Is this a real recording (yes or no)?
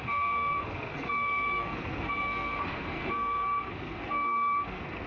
no